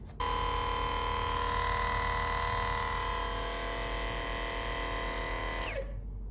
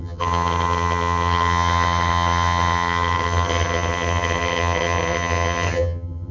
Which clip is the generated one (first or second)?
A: second